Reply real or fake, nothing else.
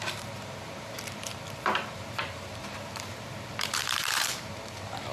fake